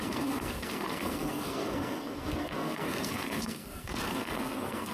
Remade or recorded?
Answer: remade